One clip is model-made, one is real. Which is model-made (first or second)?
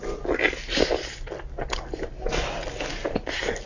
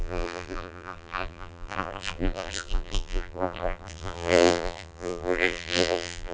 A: second